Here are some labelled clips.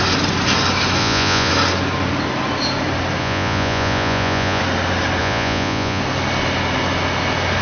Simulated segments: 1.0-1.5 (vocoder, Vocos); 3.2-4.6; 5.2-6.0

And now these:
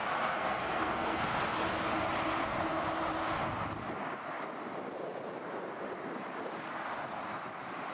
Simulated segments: 0.0-1.2 (codec, SNAC)

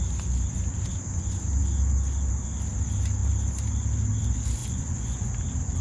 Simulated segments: 4.6-5.3 (vocoder, Vocos)

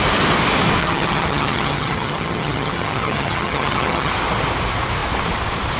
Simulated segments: 0.8-4.1 (vocoder, HiFi-GAN)

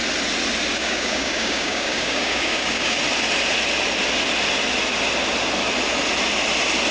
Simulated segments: 0.7-3.0 (codec, DAC)

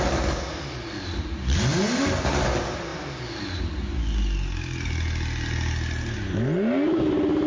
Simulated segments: none

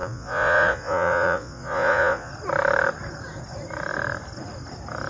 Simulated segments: 0.0-2.3 (vocoder, Vocos)

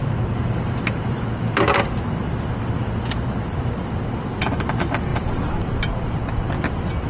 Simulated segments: 0.0-0.8 (vocoder, BigVGAN v2); 5.1-5.8